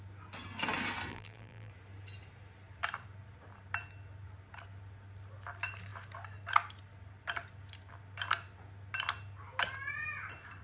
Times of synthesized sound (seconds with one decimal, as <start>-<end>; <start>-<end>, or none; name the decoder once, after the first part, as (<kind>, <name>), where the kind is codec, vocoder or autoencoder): 1.1-1.7 (vocoder, BigVGAN v2)